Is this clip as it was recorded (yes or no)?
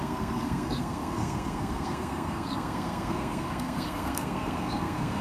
no